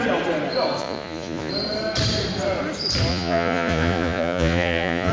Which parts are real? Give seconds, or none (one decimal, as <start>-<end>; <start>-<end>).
0.0-0.8; 1.5-3.1